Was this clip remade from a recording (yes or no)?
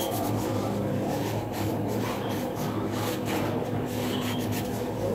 yes